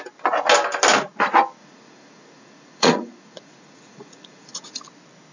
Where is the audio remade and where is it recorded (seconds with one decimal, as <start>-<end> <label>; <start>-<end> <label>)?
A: 0.0-1.6 recorded; 1.6-4.8 remade; 4.8-5.3 recorded